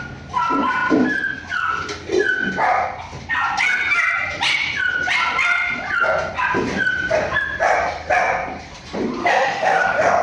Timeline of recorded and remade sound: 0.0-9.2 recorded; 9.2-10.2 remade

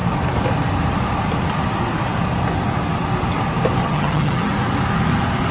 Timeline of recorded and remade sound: 0.0-3.8 recorded; 3.8-4.5 remade; 4.5-5.5 recorded

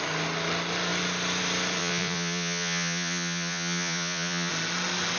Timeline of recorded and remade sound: 0.0-1.8 recorded; 1.8-4.5 remade; 4.5-5.2 recorded

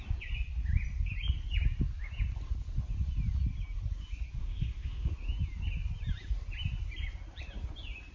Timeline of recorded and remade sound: 0.0-4.4 recorded; 4.4-5.1 remade; 5.1-8.1 recorded

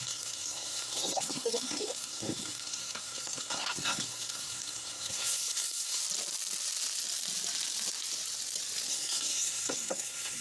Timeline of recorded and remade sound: 0.0-6.0 remade; 6.0-8.9 recorded; 8.9-10.4 remade

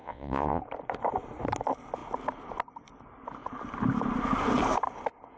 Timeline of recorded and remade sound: 0.0-0.6 remade; 0.6-5.4 recorded

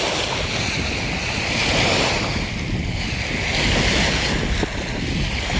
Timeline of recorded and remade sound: 0.0-5.6 recorded